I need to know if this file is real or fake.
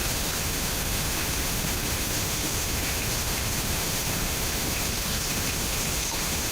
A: fake